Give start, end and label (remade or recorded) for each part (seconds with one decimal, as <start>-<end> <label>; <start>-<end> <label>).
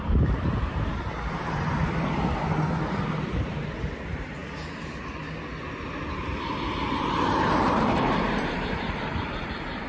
0.0-0.9 remade; 0.9-2.9 recorded; 2.9-4.4 remade; 4.4-6.9 recorded; 6.9-9.9 remade